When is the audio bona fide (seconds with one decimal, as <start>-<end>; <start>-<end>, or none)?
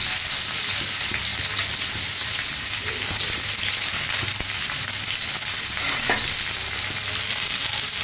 0.0-8.0